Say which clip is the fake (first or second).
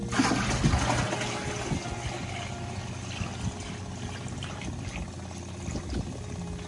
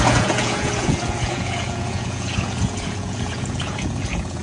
second